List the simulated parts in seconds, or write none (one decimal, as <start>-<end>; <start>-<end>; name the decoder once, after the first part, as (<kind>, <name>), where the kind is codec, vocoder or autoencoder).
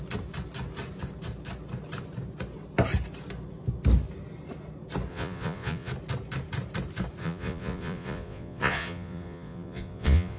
5.1-5.9 (vocoder, Vocos); 7.2-10.4